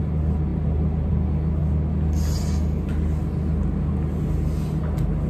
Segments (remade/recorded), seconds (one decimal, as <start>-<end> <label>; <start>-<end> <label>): 0.0-5.3 recorded